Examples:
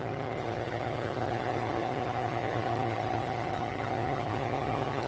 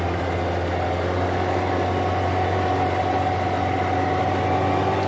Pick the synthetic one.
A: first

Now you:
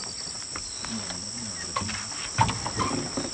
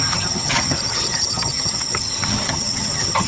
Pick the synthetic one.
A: second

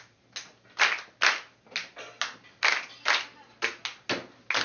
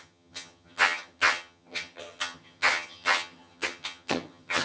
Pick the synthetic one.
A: second